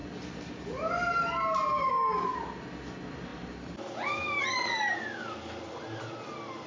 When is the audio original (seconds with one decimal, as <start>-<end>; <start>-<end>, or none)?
0.0-6.7